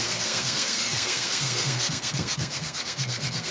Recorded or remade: remade